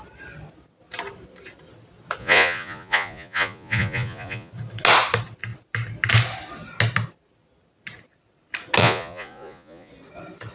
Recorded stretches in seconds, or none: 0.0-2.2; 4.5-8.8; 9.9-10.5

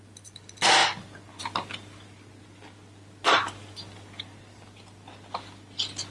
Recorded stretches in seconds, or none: 0.0-6.1

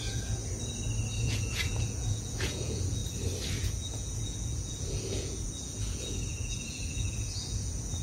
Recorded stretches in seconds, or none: 0.4-1.2; 3.0-3.6

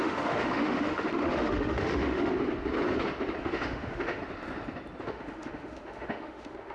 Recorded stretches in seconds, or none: 2.3-3.4; 4.2-5.0

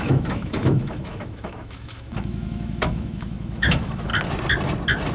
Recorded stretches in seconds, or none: 4.1-5.1

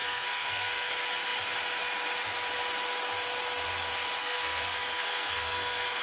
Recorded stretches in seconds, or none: 0.9-4.2

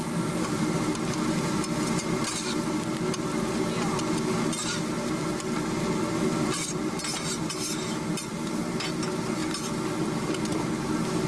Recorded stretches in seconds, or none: 0.0-11.3

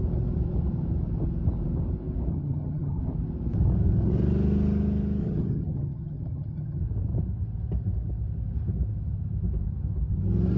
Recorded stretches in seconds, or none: 0.0-2.3; 3.0-5.2; 6.8-10.6